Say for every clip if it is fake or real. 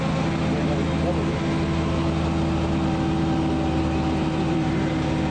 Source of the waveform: real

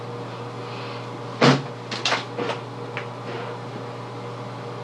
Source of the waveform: real